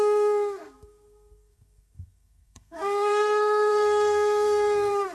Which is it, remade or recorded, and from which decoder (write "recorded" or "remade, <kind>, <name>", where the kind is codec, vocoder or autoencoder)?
remade, codec, SNAC